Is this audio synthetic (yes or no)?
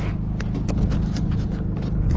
no